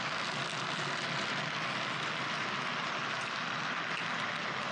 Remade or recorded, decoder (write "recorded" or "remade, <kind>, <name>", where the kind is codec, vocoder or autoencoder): recorded